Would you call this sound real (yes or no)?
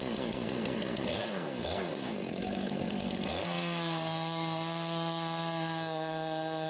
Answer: no